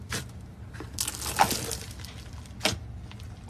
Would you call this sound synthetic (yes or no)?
no